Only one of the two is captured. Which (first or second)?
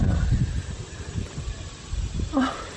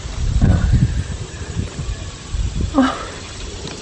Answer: first